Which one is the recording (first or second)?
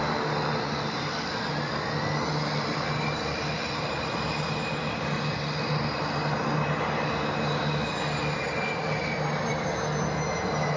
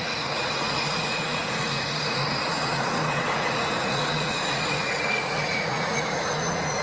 first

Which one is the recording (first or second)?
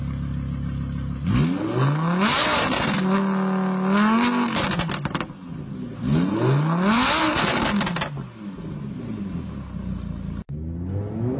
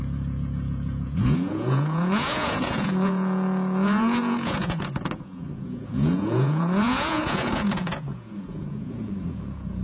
first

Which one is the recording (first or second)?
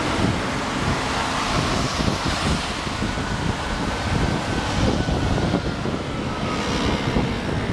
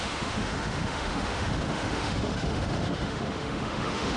first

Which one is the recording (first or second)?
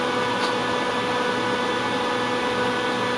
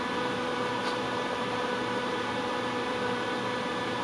first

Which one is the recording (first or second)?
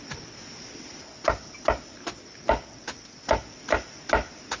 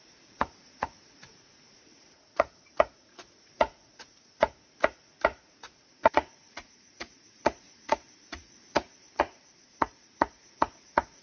first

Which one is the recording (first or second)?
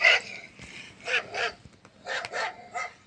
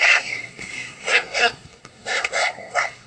first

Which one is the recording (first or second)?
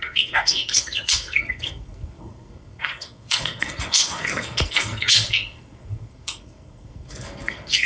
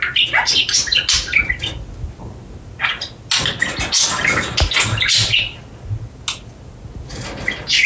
second